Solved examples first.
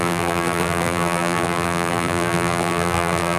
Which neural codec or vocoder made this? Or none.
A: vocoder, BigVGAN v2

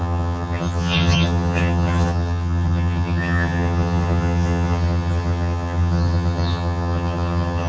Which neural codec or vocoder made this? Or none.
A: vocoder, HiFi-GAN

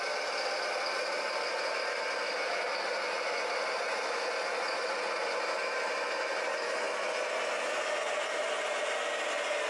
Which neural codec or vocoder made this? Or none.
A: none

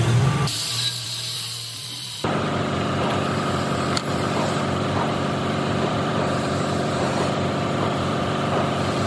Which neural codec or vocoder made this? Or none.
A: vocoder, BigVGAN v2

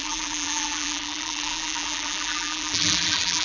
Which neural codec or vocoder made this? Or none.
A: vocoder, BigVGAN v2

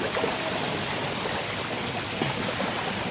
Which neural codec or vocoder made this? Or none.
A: none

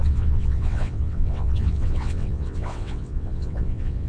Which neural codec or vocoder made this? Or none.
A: vocoder, WaveNeXt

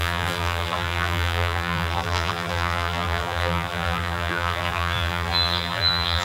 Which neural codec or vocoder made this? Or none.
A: vocoder, BigVGAN v2